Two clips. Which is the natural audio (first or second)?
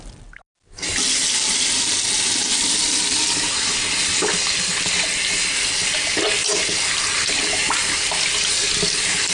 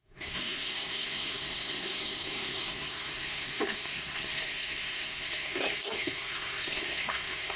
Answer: first